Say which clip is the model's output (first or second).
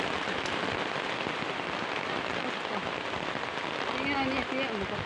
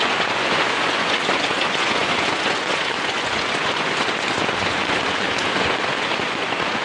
second